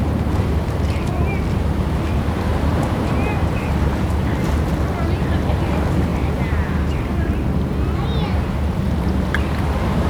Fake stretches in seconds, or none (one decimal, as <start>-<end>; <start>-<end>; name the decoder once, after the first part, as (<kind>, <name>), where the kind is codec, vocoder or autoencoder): 2.7-4.5 (vocoder, BigVGAN v2); 6.1-7.3

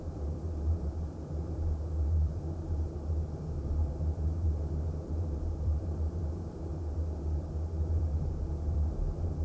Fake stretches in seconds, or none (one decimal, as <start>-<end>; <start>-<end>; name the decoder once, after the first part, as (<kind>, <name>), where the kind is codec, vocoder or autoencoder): 0.0-6.7 (vocoder, BigVGAN v2); 7.9-9.4

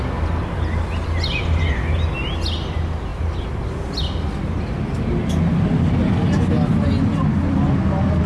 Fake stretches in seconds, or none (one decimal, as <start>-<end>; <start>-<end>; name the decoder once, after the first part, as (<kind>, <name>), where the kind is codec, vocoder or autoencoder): none

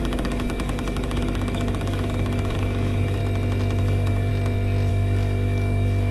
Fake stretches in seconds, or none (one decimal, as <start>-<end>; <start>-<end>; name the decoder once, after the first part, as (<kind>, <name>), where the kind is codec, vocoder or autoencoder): 0.0-3.2 (codec, DAC); 3.8-4.3; 4.9-6.1

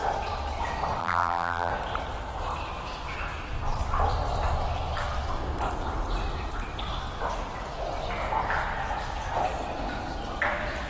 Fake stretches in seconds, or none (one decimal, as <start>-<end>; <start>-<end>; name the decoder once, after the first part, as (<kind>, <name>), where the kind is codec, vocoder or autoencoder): 1.0-1.7 (vocoder, BigVGAN v2)

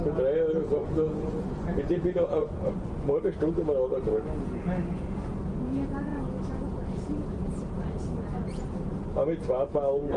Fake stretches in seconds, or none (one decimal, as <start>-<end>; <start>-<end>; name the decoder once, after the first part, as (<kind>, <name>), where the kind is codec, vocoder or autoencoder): 0.8-3.2 (vocoder, Vocos)

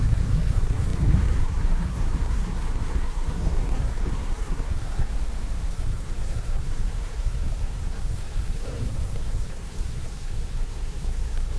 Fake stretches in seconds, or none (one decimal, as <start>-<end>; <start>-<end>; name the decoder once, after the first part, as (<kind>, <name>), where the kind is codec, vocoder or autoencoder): 0.0-5.1 (codec, SNAC); 5.7-11.6